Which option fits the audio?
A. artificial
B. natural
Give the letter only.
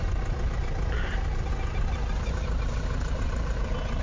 B